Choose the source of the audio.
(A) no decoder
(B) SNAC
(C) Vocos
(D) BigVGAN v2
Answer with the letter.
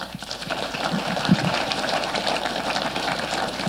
D